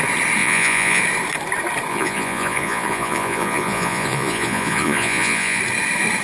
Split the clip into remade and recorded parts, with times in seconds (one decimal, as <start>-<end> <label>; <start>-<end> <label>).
0.0-0.4 recorded; 0.4-1.0 remade; 1.0-1.9 recorded; 1.9-5.6 remade; 5.6-6.2 recorded